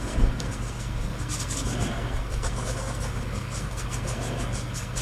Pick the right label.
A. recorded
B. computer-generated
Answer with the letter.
B